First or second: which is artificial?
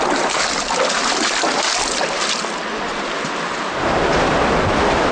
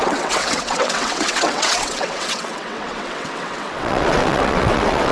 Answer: second